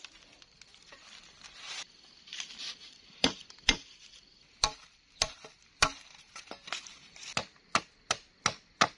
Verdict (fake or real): real